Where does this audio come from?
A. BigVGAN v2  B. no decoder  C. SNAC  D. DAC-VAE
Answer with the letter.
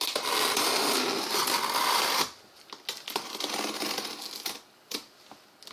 B